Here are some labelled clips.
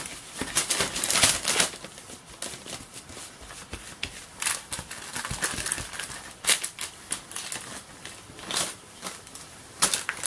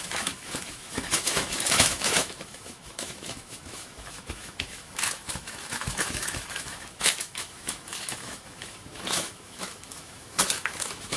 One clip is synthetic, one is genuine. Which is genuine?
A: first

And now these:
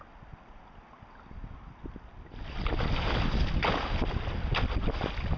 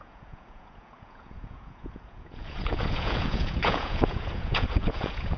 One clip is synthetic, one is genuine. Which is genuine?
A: first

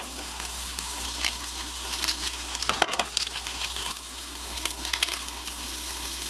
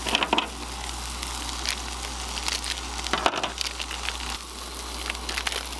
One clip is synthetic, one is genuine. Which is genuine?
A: second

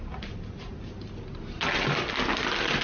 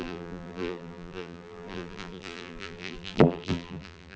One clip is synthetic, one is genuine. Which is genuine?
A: first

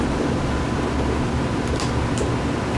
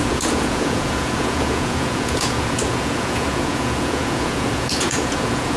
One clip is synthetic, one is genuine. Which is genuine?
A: first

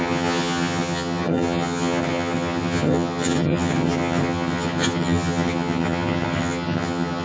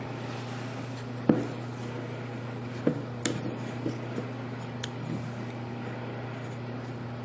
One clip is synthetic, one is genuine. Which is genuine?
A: second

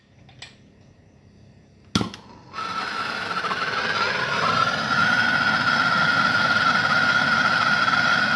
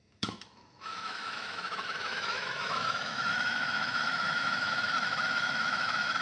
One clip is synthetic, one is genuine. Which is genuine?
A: first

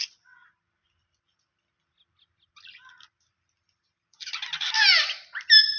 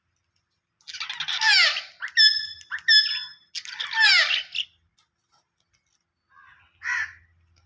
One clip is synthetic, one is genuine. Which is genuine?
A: second